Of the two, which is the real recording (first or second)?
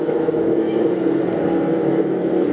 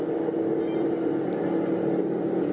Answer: second